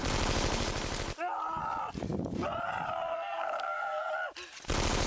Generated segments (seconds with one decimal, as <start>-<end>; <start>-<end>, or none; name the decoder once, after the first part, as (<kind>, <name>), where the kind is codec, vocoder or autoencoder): 3.1-4.1 (codec, SNAC)